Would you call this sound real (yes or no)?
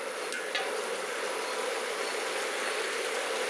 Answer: yes